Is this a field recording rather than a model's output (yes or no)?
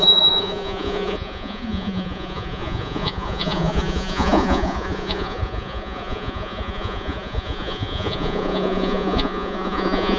no